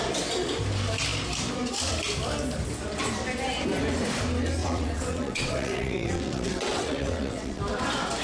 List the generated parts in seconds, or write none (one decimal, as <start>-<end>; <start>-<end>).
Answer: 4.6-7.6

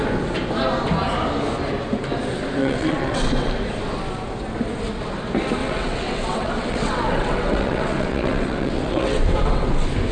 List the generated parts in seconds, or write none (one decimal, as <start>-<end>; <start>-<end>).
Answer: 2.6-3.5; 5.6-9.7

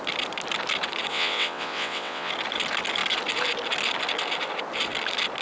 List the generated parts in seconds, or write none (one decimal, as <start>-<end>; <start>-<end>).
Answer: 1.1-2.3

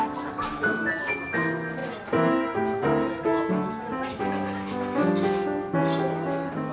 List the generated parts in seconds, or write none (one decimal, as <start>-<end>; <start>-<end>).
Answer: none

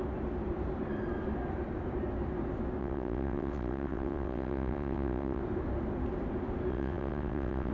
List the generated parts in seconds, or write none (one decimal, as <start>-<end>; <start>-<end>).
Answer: 2.8-5.4; 6.7-7.7